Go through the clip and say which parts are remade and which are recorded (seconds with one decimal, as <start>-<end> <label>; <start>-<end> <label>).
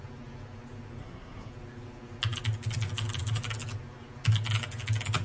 0.0-1.0 recorded; 1.0-1.5 remade; 1.5-5.2 recorded